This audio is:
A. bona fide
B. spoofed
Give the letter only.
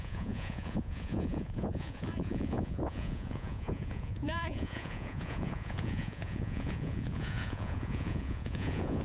B